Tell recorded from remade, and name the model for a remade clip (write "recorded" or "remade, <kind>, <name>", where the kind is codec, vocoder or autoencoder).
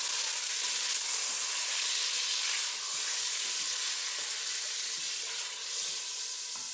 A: recorded